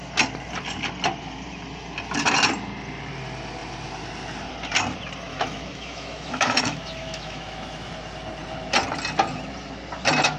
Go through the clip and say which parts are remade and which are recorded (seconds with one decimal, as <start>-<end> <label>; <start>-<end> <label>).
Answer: 0.0-5.3 recorded; 5.3-7.9 remade; 7.9-10.4 recorded

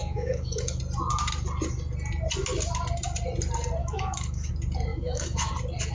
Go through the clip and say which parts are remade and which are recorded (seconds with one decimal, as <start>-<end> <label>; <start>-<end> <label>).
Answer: 0.0-0.8 remade; 0.8-3.8 recorded; 3.8-4.5 remade; 4.5-4.9 recorded; 4.9-5.5 remade; 5.5-5.9 recorded

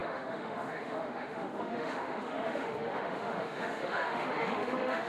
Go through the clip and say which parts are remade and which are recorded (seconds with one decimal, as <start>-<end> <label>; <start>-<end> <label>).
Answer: 0.0-5.1 remade

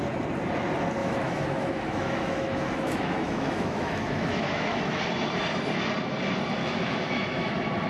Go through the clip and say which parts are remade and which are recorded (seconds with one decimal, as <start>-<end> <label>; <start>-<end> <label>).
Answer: 0.0-1.0 recorded; 1.0-5.0 remade; 5.0-6.6 recorded; 6.6-7.5 remade; 7.5-7.9 recorded

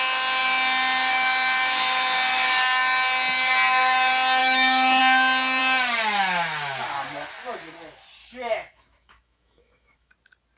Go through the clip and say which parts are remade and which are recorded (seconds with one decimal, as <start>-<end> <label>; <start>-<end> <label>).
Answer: 0.0-4.4 recorded; 4.4-5.0 remade; 5.0-8.2 recorded; 8.2-10.1 remade; 10.1-10.6 recorded

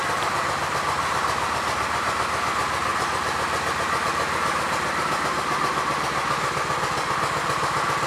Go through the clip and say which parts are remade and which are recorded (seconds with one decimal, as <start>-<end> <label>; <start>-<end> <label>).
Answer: 0.0-8.1 recorded

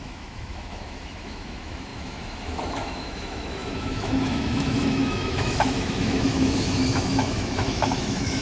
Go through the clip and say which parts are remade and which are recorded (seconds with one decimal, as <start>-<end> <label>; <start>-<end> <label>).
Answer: 0.0-8.4 remade

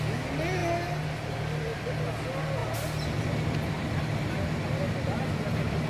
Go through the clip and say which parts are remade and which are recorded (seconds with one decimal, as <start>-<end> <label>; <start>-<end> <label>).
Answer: 0.0-5.9 recorded